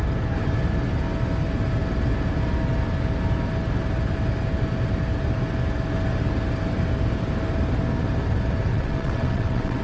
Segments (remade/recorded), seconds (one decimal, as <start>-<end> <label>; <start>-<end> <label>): 0.0-8.7 recorded; 8.7-9.8 remade